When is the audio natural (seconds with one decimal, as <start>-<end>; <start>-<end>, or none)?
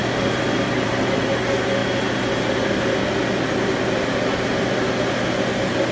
1.2-5.9